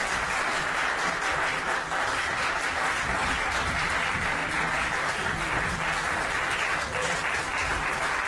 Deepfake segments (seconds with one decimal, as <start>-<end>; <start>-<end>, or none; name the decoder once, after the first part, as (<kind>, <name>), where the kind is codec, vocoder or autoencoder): none